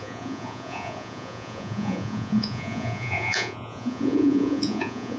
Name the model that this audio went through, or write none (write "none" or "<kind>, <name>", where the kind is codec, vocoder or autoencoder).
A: vocoder, Vocos